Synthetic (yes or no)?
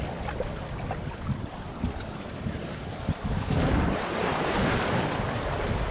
yes